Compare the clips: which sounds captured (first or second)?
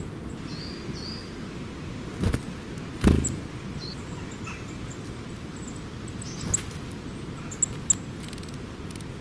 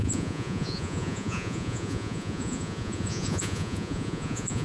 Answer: first